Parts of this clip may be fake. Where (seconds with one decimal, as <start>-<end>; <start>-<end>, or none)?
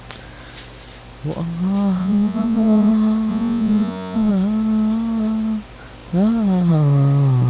2.0-2.9; 3.3-4.3